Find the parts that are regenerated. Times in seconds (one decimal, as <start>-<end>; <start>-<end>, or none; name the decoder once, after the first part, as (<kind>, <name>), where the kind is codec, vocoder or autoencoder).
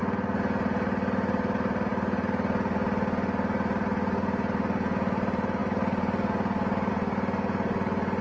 none